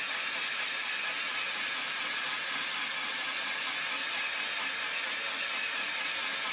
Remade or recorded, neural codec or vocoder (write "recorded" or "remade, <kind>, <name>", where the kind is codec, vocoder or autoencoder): recorded